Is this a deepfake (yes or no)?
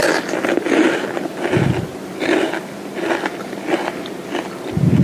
no